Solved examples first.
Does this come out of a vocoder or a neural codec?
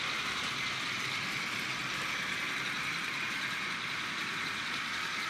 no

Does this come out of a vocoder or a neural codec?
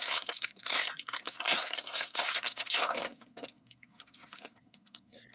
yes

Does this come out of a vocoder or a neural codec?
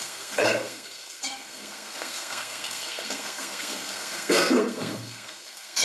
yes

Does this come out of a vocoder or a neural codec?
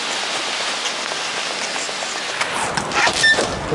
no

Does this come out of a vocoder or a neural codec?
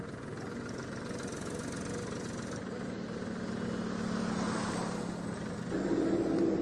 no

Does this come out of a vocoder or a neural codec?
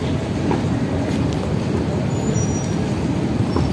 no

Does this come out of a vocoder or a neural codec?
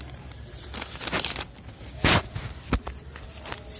no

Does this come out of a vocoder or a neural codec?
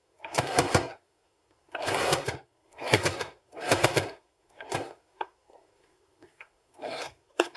yes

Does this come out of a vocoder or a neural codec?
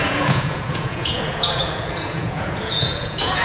yes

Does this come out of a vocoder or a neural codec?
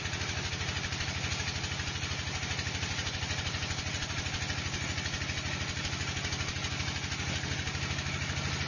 no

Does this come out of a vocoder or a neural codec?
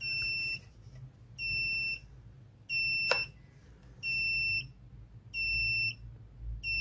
no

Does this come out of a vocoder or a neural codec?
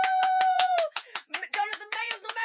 yes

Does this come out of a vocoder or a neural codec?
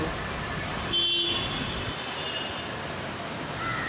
no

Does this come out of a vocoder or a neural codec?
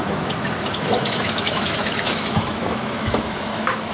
yes